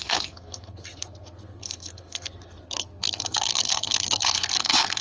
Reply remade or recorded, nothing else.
remade